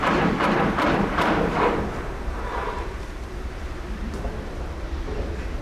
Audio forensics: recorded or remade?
remade